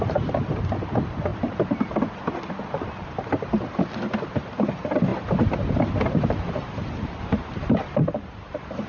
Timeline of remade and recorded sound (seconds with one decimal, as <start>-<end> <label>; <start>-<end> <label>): 0.0-5.1 recorded; 5.1-7.9 remade; 7.9-8.9 recorded